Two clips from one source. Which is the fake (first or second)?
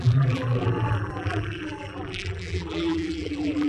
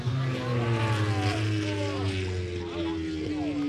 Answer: first